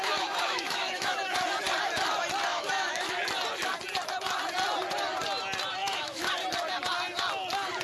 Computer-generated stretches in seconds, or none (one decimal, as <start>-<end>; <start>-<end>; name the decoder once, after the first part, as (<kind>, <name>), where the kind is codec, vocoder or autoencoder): 0.0-1.2 (autoencoder, DAC-VAE); 2.5-3.1; 5.8-6.3